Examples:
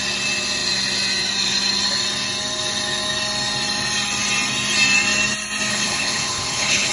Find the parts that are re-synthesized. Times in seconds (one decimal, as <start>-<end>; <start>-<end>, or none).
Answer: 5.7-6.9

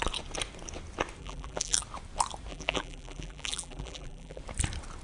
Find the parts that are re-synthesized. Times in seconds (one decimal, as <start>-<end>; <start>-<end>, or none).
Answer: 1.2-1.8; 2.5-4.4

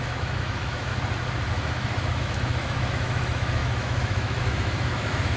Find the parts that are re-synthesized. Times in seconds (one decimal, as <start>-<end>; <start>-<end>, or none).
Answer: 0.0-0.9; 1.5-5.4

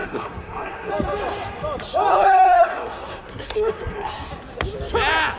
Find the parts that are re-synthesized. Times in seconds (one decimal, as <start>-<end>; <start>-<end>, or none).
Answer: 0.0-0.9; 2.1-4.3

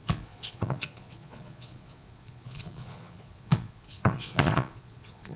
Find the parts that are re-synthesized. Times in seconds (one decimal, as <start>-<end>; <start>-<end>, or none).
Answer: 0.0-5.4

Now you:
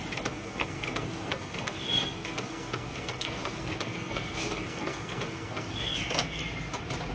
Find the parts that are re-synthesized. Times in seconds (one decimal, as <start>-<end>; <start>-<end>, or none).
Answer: 0.0-6.4

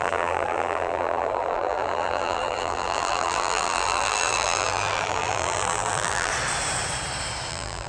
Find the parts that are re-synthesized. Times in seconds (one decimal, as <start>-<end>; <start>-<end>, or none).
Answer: 0.0-6.3; 7.5-7.9

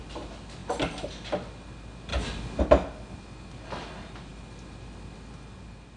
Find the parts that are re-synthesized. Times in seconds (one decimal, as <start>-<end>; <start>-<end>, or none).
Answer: none